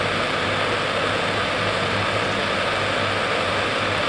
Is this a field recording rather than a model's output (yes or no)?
yes